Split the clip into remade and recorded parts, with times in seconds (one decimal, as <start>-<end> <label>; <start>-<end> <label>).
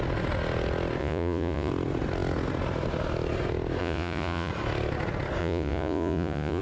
0.0-1.0 recorded; 1.0-1.7 remade; 1.7-3.8 recorded; 3.8-4.5 remade; 4.5-5.4 recorded; 5.4-6.6 remade